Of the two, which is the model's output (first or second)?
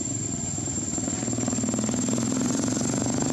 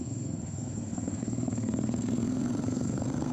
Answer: second